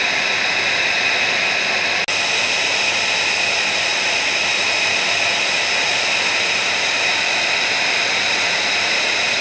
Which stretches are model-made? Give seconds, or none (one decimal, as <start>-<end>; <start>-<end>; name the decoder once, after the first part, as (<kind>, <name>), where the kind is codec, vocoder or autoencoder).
none